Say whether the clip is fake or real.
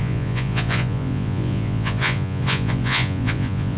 fake